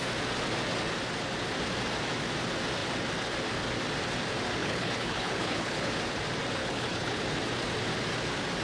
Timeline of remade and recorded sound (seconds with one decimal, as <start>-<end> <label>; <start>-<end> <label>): 0.0-4.6 recorded; 4.6-5.9 remade; 5.9-6.6 recorded; 6.6-7.2 remade; 7.2-8.6 recorded